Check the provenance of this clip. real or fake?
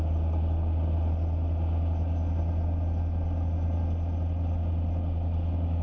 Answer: real